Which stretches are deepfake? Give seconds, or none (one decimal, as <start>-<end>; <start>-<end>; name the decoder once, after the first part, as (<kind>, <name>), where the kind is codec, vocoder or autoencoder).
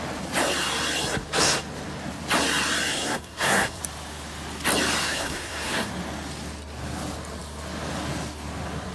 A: 2.9-3.8 (codec, SNAC); 5.0-5.9